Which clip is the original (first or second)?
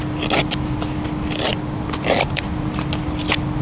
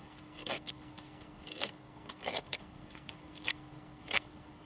first